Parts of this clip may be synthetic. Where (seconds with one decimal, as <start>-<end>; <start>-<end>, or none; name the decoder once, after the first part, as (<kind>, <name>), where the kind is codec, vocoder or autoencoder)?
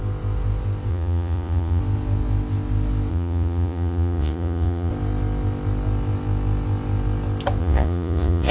0.9-1.8 (vocoder, Vocos); 3.1-4.9; 7.6-8.5